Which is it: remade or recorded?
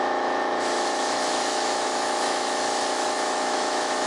remade